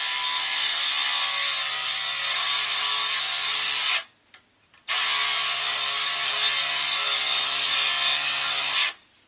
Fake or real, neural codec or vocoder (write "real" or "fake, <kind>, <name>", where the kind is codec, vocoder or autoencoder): real